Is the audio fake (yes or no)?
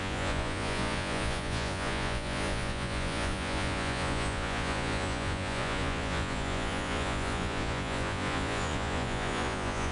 yes